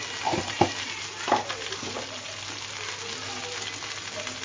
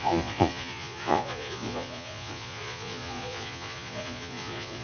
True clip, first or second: first